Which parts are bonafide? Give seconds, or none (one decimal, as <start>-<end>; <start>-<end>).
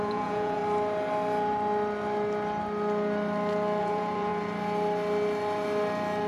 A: 0.6-3.8; 4.3-6.3